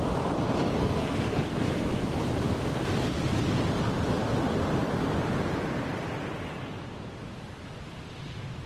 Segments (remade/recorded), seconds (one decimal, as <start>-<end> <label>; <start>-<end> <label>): 0.0-0.7 recorded; 0.7-1.7 remade; 1.7-8.7 recorded

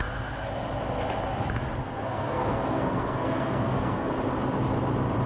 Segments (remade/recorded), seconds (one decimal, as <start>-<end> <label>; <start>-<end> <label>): 0.0-1.8 recorded; 1.8-4.1 remade; 4.1-5.3 recorded

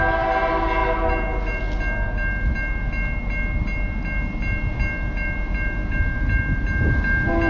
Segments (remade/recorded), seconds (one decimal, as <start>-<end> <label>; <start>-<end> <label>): 0.0-7.5 recorded

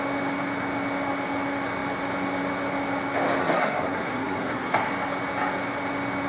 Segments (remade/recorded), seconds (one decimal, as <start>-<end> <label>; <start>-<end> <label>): 0.0-3.4 recorded; 3.4-4.9 remade; 4.9-6.3 recorded

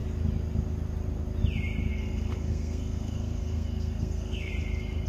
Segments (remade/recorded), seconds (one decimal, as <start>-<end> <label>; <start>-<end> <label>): 0.0-1.9 recorded; 1.9-4.5 remade; 4.5-5.1 recorded

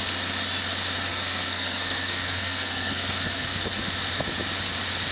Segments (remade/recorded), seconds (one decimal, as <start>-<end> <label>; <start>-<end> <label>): 0.0-1.1 recorded; 1.1-3.6 remade; 3.6-5.1 recorded